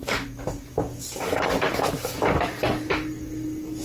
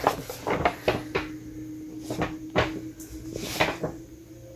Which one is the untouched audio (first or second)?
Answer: second